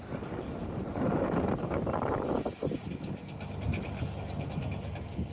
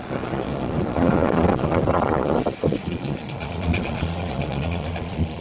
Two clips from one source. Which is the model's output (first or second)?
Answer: second